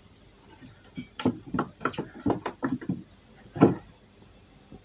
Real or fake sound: real